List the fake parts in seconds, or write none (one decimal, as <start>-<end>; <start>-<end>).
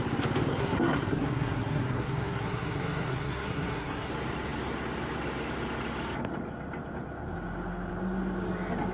0.5-4.1